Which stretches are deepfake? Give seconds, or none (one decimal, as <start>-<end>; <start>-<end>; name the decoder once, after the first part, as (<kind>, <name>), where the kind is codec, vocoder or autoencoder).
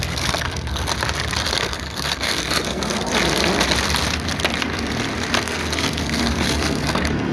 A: 0.0-0.9 (codec, SNAC); 1.6-3.1; 5.4-7.3